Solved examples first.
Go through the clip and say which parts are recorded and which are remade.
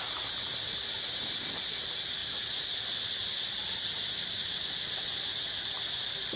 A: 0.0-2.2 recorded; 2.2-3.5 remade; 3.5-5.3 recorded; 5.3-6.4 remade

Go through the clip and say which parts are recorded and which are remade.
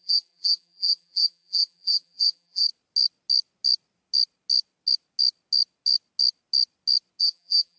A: 0.0-2.7 remade; 2.7-7.2 recorded; 7.2-7.8 remade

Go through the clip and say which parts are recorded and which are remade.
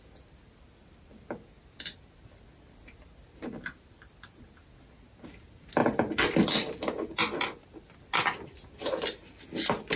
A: 0.0-10.0 recorded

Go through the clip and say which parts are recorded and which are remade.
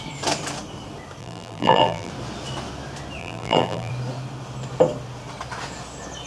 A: 0.0-1.2 recorded; 1.2-2.1 remade; 2.1-3.2 recorded; 3.2-3.9 remade; 3.9-6.3 recorded